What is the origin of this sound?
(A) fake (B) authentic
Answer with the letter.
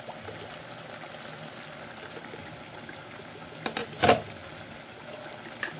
B